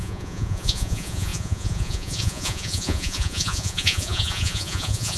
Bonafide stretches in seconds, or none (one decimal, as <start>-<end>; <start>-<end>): none